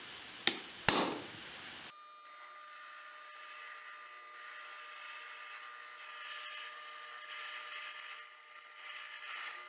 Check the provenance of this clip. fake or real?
real